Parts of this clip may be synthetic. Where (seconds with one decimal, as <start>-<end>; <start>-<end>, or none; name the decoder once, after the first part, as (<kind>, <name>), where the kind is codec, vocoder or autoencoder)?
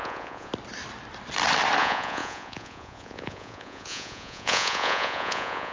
0.0-0.5 (vocoder, Vocos); 1.8-5.7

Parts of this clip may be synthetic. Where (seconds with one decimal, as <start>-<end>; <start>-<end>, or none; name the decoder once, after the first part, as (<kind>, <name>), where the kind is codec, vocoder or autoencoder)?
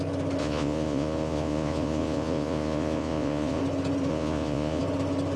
0.4-3.6 (vocoder, Vocos); 4.1-4.8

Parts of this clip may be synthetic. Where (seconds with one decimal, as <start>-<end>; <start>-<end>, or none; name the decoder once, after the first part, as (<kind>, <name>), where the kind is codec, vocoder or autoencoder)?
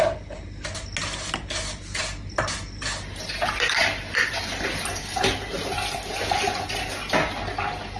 none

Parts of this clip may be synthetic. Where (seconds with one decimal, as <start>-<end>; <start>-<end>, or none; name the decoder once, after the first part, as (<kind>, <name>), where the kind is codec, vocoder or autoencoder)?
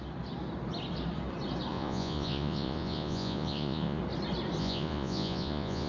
1.7-4.0 (vocoder, Vocos); 4.6-5.9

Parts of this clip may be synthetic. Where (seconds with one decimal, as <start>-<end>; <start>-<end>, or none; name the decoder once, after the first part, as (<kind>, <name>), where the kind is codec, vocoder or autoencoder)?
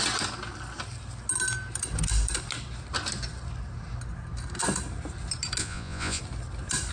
5.6-6.2 (vocoder, Vocos)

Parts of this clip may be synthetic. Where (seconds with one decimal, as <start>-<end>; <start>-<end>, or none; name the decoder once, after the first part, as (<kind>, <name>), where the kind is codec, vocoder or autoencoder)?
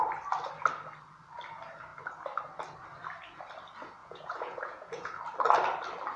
4.0-5.2 (vocoder, Vocos)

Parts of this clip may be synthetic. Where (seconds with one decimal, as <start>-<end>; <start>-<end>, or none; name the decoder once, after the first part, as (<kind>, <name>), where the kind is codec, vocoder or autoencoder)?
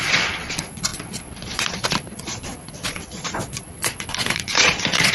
0.0-5.1 (vocoder, Vocos)